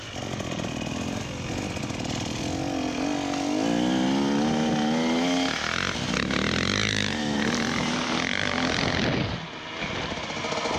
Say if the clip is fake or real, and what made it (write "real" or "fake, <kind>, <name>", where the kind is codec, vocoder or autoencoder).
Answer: real